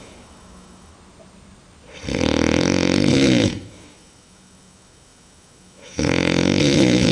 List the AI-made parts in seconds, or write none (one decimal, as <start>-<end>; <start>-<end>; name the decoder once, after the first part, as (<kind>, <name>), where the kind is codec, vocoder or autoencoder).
0.0-0.9 (autoencoder, DAC-VAE); 3.1-7.1